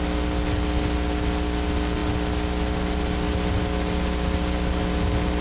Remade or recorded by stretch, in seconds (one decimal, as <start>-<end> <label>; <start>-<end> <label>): 0.0-5.4 recorded